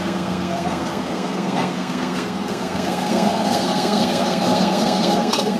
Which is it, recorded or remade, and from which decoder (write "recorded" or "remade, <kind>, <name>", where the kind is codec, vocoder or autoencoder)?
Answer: remade, codec, SNAC